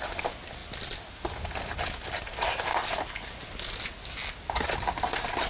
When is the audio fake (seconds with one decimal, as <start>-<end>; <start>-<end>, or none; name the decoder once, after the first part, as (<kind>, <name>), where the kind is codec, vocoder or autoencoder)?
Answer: none